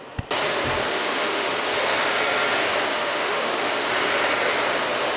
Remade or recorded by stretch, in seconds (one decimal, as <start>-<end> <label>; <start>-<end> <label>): 0.0-0.8 recorded; 0.8-1.5 remade; 1.5-2.9 recorded; 2.9-3.9 remade; 3.9-5.2 recorded